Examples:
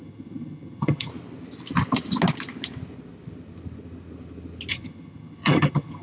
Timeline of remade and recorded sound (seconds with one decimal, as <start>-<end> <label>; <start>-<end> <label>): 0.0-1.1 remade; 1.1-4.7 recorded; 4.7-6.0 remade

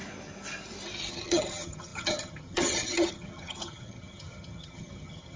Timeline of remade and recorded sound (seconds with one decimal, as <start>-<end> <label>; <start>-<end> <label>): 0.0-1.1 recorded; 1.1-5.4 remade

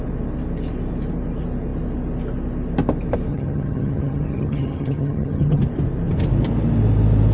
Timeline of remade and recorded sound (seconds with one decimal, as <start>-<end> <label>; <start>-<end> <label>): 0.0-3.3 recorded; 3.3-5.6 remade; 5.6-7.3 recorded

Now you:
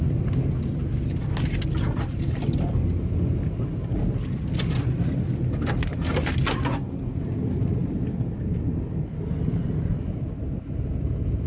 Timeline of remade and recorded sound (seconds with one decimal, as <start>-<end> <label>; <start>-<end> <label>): 0.0-11.5 recorded

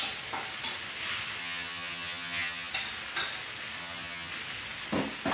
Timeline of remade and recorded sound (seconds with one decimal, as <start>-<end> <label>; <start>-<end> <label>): 0.0-1.4 recorded; 1.4-2.7 remade; 2.7-3.8 recorded; 3.8-4.3 remade; 4.3-5.3 recorded

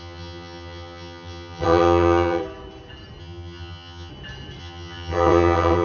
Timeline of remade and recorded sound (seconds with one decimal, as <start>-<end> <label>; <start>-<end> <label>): 0.0-2.4 remade; 2.4-3.2 recorded; 3.2-4.1 remade; 4.1-4.6 recorded; 4.6-5.8 remade

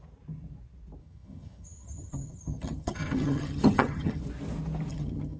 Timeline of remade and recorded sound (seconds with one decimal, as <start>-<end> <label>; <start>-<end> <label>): 0.0-1.0 recorded; 1.0-4.2 remade; 4.2-4.9 recorded; 4.9-5.4 remade